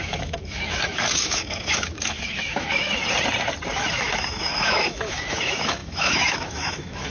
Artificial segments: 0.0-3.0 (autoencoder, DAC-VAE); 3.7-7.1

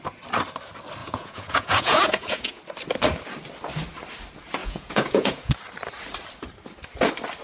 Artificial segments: 1.0-2.6 (vocoder, Vocos); 4.6-5.5

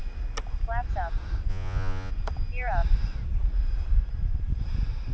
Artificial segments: 1.5-2.1 (vocoder, Vocos)

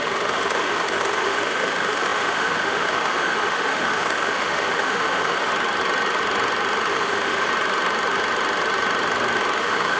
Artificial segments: 0.0-5.5 (autoencoder, DAC-VAE); 6.9-7.5; 9.6-10.0

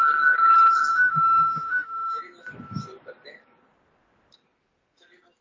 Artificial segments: 0.9-2.2 (autoencoder, DAC-VAE)